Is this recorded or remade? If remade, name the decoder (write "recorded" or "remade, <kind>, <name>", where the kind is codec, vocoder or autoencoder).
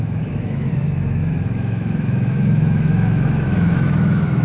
remade, autoencoder, DAC-VAE